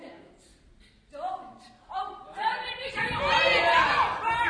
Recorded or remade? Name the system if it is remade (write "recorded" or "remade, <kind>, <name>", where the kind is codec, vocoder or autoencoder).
recorded